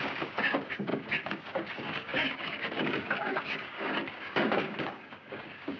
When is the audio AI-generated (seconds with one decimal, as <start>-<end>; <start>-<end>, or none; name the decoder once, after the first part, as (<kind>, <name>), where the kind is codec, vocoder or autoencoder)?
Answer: 0.0-5.8 (codec, DAC)